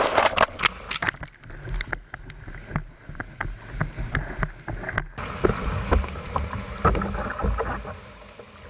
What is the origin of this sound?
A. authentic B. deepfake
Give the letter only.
A